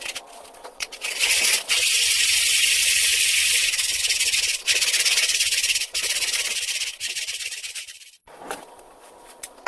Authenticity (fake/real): fake